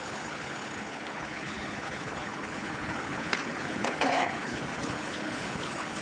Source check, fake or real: fake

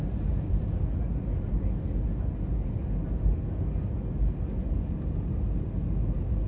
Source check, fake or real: real